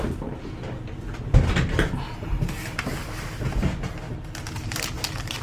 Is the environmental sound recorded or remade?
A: recorded